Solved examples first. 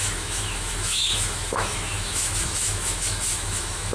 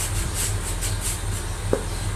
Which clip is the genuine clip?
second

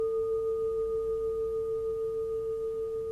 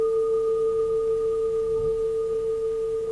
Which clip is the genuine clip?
first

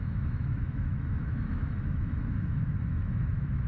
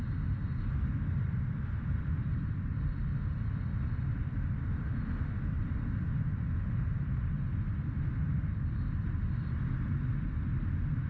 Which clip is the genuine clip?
second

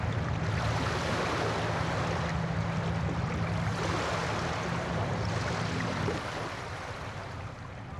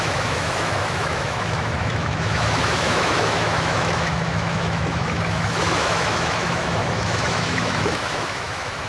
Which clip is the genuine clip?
first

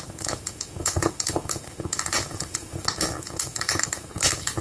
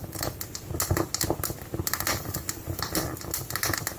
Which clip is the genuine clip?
second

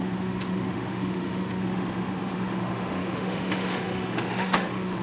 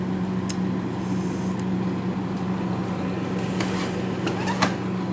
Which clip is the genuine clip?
second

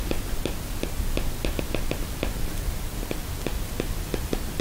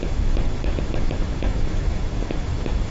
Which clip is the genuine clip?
first